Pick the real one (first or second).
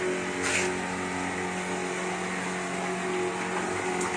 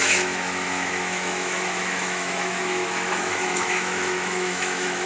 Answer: first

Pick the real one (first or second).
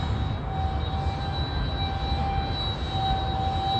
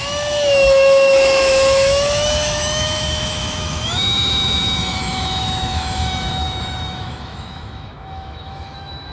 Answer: first